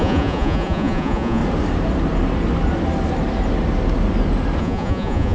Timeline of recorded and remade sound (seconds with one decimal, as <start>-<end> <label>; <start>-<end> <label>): 0.0-1.4 remade; 1.4-4.6 recorded; 4.6-5.3 remade